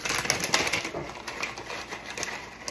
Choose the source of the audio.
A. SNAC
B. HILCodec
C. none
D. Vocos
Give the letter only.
C